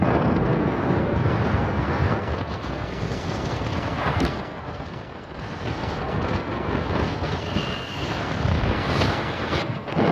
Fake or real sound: fake